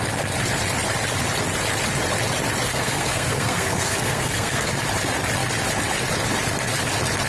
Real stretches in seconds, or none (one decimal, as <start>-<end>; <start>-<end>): 0.0-2.7; 4.7-7.3